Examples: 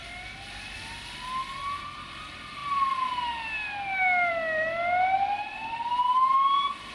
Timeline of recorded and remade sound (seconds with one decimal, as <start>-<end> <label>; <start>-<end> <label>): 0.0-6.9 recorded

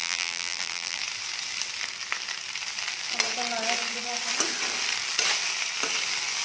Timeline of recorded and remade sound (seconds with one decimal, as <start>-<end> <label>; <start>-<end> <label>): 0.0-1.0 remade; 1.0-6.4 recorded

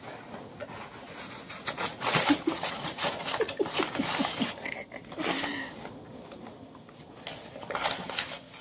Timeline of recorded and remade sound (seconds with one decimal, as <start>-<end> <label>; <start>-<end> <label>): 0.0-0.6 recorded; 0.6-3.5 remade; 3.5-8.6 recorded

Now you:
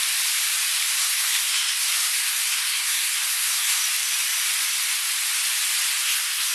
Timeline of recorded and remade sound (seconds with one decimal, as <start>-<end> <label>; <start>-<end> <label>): 0.0-1.0 recorded; 1.0-3.8 remade; 3.8-5.9 recorded; 5.9-6.5 remade

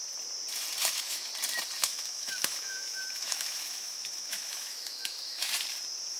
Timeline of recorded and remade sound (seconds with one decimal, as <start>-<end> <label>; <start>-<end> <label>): 0.0-0.8 recorded; 0.8-1.3 remade; 1.3-1.8 recorded; 1.8-5.5 remade; 5.5-6.2 recorded

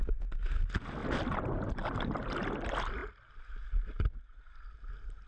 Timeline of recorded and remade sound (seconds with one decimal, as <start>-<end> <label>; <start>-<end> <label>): 0.0-1.0 recorded; 1.0-1.7 remade; 1.7-3.0 recorded; 3.0-3.5 remade; 3.5-5.3 recorded